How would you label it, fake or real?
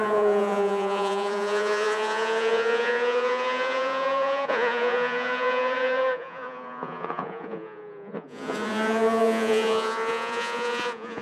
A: fake